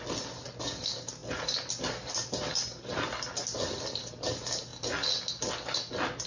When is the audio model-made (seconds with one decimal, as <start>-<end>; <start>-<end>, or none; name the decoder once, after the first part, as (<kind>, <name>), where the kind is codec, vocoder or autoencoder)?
none

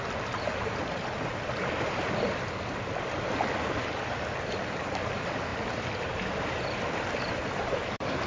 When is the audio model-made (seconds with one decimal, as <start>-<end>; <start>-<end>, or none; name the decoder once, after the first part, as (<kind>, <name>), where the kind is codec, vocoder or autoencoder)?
none

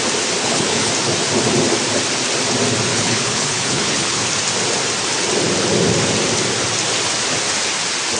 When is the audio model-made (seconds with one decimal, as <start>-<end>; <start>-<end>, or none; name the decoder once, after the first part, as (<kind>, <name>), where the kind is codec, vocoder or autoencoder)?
0.4-0.9 (codec, HILCodec); 2.9-4.3

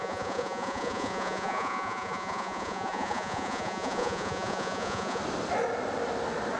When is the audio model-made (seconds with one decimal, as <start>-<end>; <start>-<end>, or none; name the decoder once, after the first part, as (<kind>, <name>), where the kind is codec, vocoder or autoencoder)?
0.0-5.2 (vocoder, Vocos)

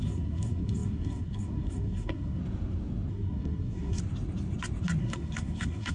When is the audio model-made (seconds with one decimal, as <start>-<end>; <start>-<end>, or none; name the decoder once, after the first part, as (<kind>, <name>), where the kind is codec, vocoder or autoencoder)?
0.0-2.4 (codec, SNAC); 3.1-4.0; 5.0-5.9

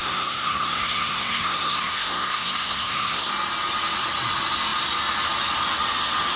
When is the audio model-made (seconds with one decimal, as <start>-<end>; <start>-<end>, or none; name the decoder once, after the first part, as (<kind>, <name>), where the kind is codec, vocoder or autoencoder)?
0.0-3.3 (codec, SNAC)

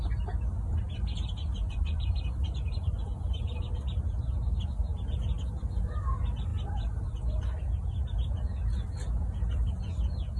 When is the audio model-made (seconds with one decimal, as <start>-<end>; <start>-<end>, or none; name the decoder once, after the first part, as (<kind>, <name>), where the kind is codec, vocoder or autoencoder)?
1.4-2.1 (vocoder, Vocos)

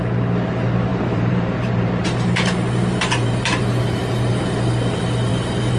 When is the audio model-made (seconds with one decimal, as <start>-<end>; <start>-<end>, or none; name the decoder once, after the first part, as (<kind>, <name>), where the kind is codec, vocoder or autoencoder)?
0.9-4.4 (vocoder, BigVGAN v2); 5.3-5.8